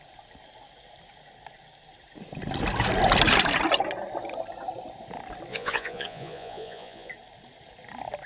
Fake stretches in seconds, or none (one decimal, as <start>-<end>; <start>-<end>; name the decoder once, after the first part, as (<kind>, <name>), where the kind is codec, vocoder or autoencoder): 5.5-7.1 (vocoder, Vocos)